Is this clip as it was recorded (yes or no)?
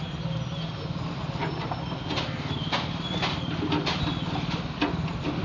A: yes